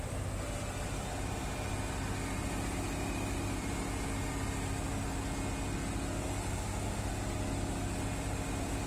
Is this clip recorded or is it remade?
recorded